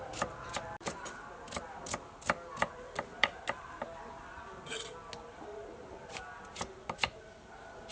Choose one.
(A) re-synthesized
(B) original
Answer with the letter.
B